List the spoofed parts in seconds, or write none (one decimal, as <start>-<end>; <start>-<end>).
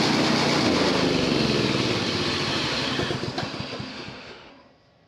3.9-4.5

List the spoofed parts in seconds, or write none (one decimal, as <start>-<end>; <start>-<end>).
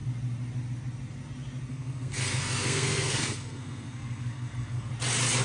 1.7-4.9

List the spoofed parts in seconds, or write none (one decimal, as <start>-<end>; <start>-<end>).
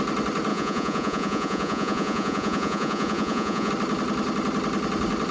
0.5-3.7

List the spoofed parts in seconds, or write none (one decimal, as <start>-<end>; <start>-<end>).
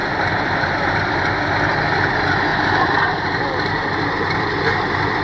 0.0-1.1; 2.5-4.2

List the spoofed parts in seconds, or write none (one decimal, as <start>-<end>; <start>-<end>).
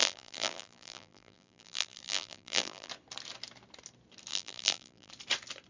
0.0-2.9; 4.3-5.1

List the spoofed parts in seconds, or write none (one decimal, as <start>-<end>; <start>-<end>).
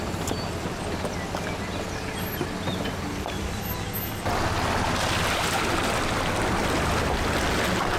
2.7-3.4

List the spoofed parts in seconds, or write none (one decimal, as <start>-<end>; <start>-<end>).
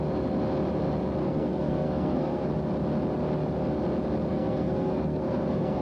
1.2-2.5; 4.3-5.8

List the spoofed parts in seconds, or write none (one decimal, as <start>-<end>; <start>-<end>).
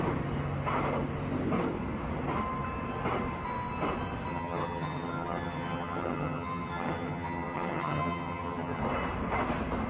4.3-8.8